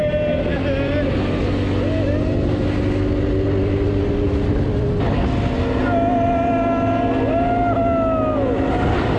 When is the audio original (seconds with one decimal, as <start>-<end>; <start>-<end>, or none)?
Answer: 0.0-9.2